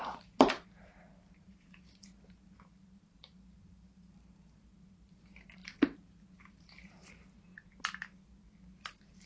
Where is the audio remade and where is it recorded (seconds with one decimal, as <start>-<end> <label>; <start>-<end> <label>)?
0.0-7.5 remade; 7.5-8.9 recorded; 8.9-9.3 remade